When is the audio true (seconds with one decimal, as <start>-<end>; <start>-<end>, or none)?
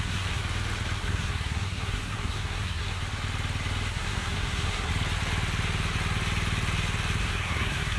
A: 0.4-1.0; 3.0-3.9; 4.9-7.2